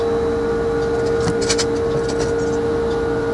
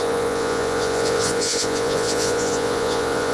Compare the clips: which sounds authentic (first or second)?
first